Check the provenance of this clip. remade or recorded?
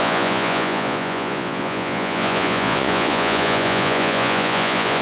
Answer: remade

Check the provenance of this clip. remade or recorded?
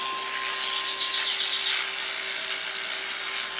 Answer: recorded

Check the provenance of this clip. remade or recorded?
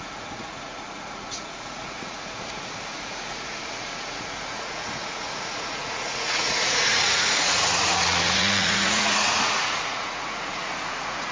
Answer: remade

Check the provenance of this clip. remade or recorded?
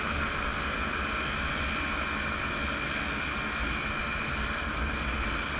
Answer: recorded